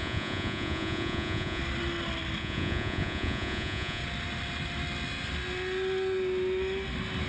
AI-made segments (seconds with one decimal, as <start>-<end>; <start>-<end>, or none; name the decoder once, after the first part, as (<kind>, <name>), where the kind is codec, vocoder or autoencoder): 0.0-1.6 (vocoder, Vocos); 2.4-4.0